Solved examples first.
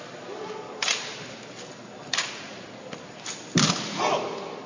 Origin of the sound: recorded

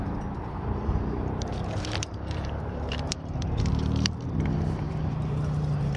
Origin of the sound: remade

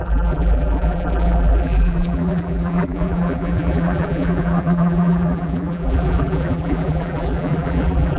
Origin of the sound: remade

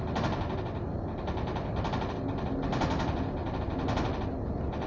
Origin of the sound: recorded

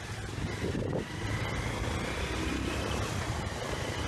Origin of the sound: recorded